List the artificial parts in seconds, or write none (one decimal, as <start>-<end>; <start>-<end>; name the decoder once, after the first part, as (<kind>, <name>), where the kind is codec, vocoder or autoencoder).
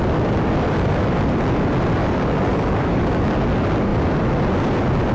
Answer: 2.0-3.0 (codec, DAC)